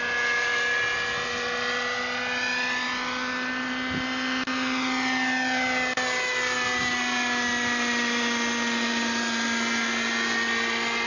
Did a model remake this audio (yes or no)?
no